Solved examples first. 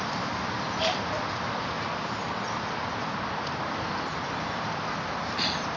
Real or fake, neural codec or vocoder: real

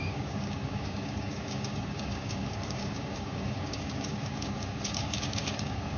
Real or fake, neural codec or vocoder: fake, codec, DAC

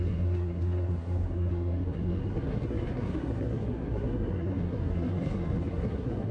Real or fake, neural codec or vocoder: fake, codec, SNAC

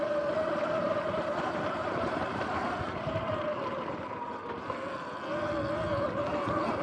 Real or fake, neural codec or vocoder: real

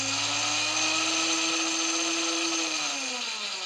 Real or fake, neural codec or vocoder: real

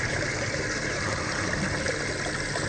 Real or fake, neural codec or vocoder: real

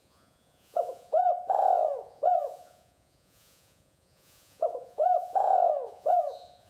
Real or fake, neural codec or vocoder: fake, vocoder, Vocos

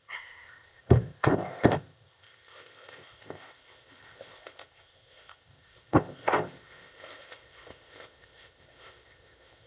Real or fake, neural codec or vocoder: fake, codec, ZipCodec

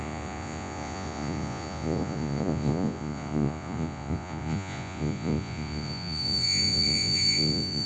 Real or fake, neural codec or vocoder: fake, vocoder, Vocos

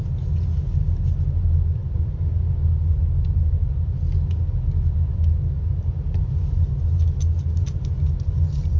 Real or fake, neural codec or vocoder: real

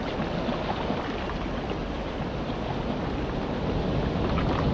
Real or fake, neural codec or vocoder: real